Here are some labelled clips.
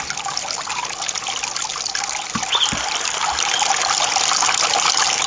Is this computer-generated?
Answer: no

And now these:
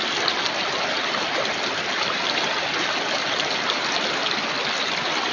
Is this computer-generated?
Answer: no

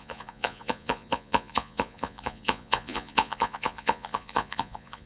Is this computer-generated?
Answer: yes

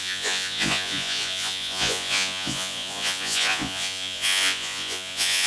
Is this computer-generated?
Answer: yes